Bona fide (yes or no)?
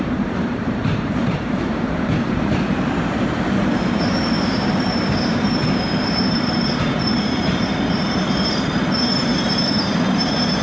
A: no